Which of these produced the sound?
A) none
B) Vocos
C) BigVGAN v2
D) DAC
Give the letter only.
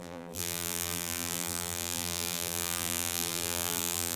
C